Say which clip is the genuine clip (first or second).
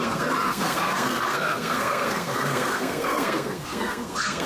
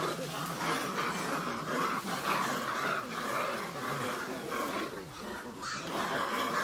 second